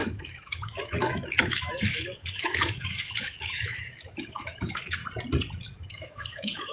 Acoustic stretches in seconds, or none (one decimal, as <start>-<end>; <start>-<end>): 5.0-5.9